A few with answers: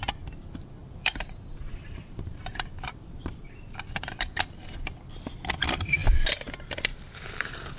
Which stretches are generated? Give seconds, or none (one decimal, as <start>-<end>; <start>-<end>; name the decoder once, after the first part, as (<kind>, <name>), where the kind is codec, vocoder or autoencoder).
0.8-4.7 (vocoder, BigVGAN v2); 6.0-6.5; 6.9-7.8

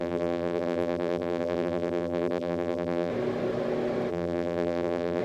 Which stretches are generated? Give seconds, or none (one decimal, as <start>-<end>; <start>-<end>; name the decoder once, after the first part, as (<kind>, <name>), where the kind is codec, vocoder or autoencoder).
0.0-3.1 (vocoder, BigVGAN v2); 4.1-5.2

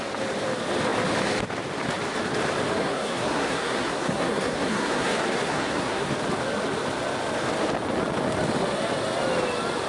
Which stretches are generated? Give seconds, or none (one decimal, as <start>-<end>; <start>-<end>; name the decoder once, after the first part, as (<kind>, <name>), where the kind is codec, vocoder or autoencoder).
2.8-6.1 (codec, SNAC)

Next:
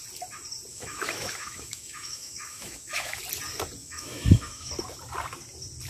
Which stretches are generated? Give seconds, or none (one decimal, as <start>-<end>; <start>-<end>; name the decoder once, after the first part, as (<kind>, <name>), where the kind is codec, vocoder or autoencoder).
0.7-3.2 (autoencoder, DAC-VAE); 3.8-4.7

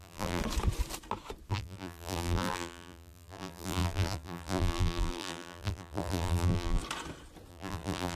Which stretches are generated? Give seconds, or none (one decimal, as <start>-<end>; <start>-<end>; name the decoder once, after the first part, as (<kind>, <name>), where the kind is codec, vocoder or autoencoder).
0.0-0.4 (vocoder, BigVGAN v2); 1.5-6.8; 7.5-8.2

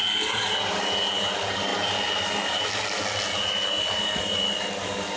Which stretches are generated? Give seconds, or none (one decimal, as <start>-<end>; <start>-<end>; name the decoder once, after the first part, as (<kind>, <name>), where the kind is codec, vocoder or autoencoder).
none

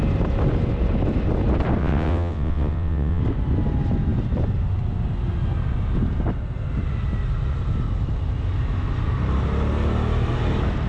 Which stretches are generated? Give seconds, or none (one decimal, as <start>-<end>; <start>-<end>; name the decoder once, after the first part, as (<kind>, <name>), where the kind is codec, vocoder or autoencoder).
1.8-3.2 (vocoder, WaveNeXt)

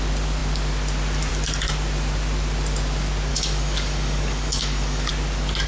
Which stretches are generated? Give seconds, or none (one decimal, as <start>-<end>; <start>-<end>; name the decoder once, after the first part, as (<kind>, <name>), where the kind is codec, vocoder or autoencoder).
3.3-5.1 (codec, DAC)